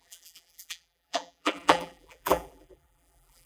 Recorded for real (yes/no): no